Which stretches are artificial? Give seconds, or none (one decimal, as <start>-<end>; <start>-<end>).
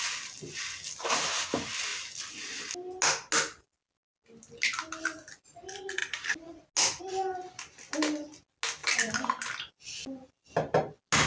none